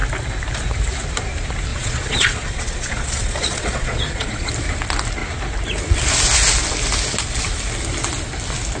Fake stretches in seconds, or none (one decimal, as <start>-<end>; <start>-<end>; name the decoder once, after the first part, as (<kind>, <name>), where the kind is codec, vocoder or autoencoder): 1.7-4.5 (vocoder, Vocos)